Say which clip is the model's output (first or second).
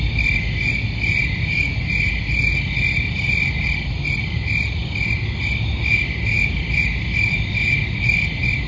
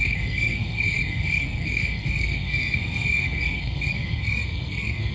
second